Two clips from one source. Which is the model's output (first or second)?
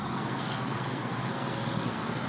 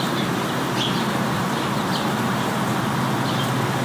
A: first